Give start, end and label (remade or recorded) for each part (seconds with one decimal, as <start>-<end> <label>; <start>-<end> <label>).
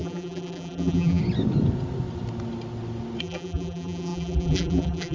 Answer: 0.0-1.2 remade; 1.2-3.2 recorded; 3.2-5.1 remade